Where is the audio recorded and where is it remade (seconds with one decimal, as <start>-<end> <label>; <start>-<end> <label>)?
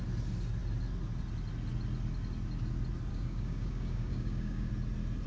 0.0-3.1 recorded; 3.1-4.7 remade; 4.7-5.3 recorded